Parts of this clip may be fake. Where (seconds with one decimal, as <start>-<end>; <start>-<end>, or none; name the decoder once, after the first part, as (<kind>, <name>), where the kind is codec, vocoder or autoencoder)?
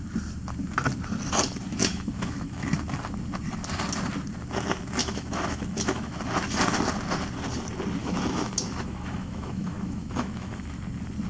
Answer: 1.8-2.6 (autoencoder, DAC-VAE); 5.0-6.2; 8.0-10.8